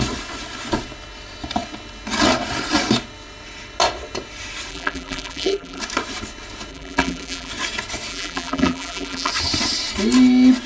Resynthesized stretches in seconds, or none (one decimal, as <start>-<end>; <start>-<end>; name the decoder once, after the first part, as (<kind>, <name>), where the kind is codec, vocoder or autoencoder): 4.7-5.8 (vocoder, BigVGAN v2); 6.7-7.5; 8.1-9.3

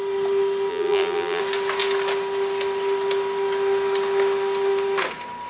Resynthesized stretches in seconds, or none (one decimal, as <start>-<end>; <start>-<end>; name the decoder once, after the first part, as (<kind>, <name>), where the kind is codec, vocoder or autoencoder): 0.7-1.4 (vocoder, BigVGAN v2)

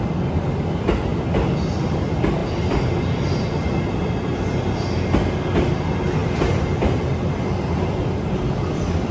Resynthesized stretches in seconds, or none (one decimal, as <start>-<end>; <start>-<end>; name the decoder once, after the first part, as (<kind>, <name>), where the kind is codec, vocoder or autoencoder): 2.4-2.9 (vocoder, BigVGAN v2)

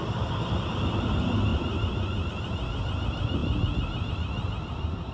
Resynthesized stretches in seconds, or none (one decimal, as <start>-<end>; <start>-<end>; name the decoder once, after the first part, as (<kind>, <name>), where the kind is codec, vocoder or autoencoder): none

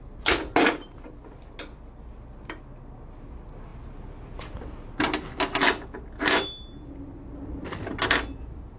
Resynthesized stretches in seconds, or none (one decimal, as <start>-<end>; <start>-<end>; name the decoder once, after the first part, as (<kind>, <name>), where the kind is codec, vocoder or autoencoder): none